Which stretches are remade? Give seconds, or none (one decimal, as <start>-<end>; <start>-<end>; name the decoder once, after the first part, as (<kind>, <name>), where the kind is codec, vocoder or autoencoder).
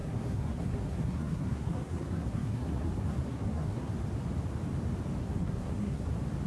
0.0-3.9 (codec, SNAC); 5.2-6.1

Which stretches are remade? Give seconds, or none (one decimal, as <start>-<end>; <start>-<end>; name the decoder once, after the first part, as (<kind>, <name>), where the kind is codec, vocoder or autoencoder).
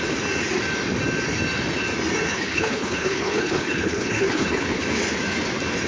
2.3-4.8 (codec, HILCodec)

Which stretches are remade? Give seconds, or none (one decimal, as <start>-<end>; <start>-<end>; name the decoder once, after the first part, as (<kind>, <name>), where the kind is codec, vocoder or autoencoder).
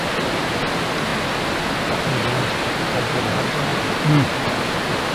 none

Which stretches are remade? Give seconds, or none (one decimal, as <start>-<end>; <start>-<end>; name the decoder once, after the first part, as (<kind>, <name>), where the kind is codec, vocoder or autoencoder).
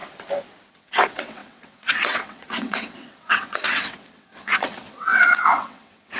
0.7-6.2 (vocoder, WaveNeXt)